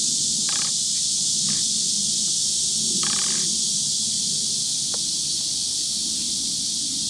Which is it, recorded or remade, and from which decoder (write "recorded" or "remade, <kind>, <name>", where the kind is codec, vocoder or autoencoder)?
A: recorded